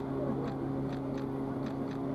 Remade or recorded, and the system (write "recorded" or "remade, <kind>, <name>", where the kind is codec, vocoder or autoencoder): recorded